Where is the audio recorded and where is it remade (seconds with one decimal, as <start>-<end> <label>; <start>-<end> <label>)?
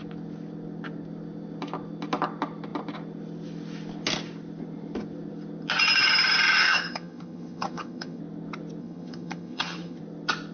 0.0-6.6 recorded; 6.6-8.2 remade; 8.2-8.8 recorded; 8.8-10.0 remade; 10.0-10.5 recorded